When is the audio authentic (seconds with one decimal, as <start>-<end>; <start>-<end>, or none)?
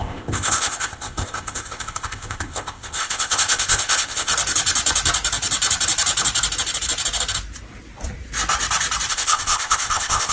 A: 4.3-9.1